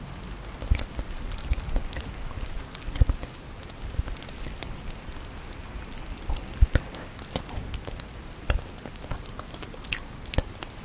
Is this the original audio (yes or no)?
yes